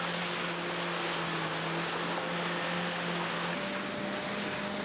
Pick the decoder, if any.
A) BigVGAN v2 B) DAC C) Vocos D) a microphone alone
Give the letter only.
D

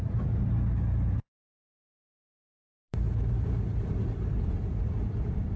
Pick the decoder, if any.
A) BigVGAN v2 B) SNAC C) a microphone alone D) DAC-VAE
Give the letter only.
A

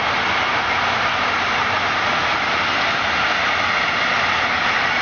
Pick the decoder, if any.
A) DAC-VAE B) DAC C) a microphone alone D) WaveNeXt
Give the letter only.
C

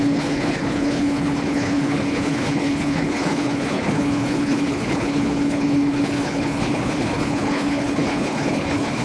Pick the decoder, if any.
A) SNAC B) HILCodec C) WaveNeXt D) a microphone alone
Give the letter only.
B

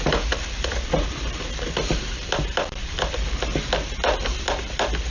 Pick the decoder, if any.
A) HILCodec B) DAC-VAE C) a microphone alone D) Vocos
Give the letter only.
C